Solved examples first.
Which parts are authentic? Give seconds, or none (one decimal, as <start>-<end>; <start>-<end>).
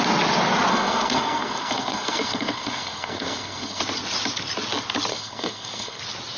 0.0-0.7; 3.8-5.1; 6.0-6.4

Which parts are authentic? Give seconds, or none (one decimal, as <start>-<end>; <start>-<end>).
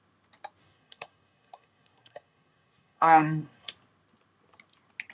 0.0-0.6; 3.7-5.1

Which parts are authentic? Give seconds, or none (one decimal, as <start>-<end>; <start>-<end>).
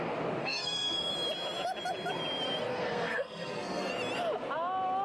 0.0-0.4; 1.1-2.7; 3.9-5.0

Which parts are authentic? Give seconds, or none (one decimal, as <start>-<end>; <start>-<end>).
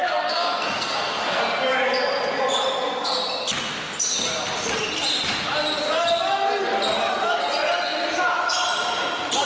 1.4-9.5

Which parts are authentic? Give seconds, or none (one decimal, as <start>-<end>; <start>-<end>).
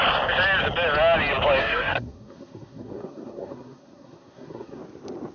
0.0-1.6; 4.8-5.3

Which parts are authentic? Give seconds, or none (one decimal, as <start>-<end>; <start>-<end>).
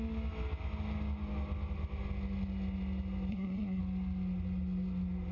0.0-3.3; 3.8-5.3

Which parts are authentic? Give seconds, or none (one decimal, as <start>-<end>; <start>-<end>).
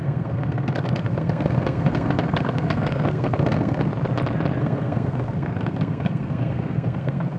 3.9-4.6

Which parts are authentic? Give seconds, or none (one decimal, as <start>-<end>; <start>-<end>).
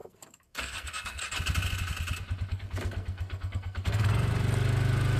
1.2-2.5; 4.3-5.2